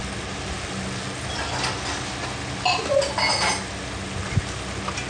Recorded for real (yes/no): yes